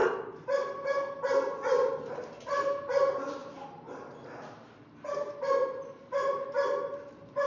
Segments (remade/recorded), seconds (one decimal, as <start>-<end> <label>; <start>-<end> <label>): 0.0-7.5 recorded